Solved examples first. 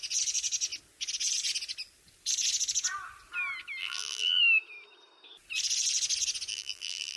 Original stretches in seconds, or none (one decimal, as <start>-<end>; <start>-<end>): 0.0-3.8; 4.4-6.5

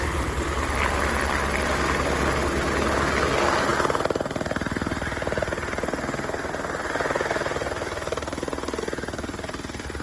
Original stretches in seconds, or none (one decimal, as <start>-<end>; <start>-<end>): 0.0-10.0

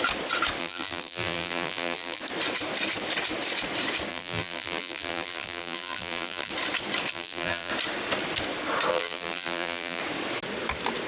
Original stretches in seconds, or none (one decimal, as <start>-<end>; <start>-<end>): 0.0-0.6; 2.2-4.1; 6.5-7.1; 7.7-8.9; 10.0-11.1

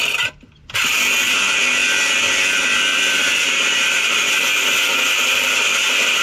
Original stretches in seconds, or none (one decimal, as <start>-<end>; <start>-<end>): 0.0-2.9; 4.3-6.2

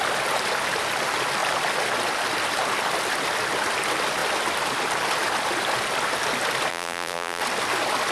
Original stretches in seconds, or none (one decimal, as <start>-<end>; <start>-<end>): 0.0-6.7; 7.4-8.1